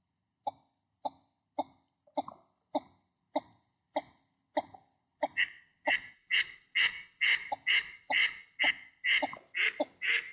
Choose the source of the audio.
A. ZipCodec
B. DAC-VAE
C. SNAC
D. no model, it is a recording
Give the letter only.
D